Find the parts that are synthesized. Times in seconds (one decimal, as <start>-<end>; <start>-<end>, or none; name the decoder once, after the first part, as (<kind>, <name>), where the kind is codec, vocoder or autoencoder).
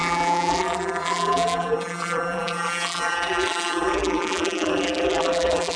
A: 0.0-5.8 (vocoder, BigVGAN v2)